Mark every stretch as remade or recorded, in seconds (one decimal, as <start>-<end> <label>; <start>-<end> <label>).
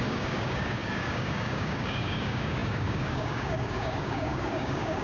0.0-5.0 remade